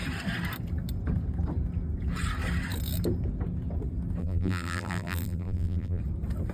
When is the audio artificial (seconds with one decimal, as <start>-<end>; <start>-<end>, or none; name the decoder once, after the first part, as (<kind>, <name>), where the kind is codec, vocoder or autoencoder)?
4.2-6.0 (vocoder, BigVGAN v2)